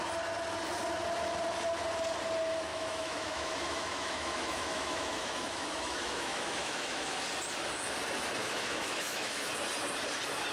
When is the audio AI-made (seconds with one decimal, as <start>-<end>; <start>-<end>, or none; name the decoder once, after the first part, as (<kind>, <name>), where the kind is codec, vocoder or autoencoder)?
2.7-7.2 (autoencoder, DAC-VAE); 8.4-9.5